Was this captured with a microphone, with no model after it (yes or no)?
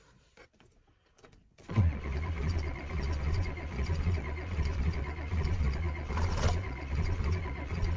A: no